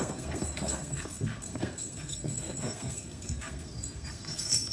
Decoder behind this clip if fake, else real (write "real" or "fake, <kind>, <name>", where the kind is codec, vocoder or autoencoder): fake, codec, SNAC